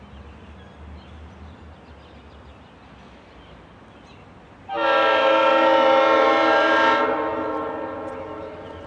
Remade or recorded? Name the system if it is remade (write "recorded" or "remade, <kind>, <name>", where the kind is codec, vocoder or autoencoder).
recorded